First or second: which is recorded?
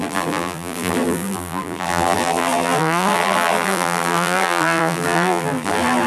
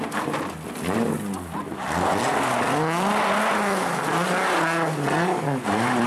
second